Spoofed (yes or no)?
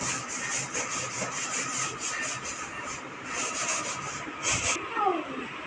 no